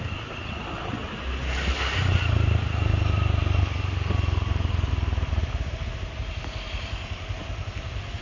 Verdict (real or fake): real